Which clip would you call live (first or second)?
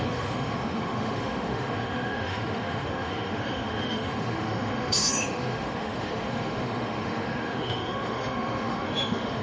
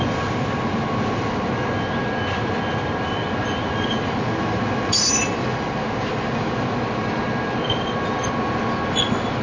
second